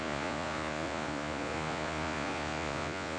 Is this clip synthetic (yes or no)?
yes